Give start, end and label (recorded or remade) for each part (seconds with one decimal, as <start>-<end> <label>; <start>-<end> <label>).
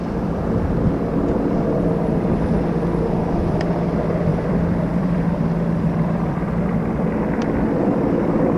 0.0-4.3 recorded; 4.3-5.4 remade; 5.4-8.6 recorded